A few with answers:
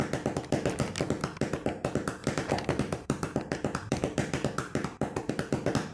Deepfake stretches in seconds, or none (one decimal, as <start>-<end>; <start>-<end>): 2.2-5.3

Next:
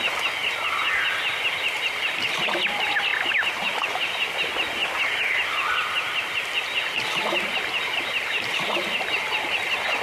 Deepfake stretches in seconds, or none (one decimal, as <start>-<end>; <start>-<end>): 4.8-9.6

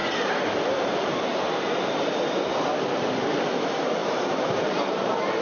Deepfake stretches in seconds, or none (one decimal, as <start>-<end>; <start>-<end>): 0.0-2.0; 4.0-5.4